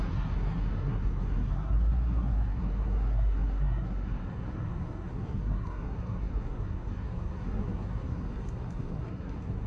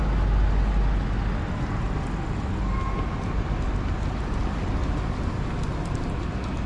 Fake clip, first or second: first